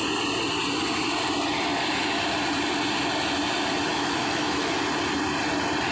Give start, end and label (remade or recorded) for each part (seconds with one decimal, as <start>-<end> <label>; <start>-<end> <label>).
0.0-3.9 recorded; 3.9-4.7 remade; 4.7-5.9 recorded